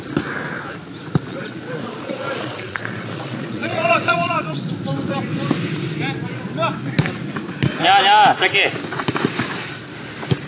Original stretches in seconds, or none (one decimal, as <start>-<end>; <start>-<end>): 0.0-1.3; 4.7-10.5